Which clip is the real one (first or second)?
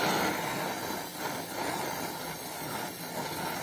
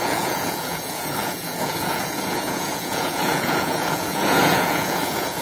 first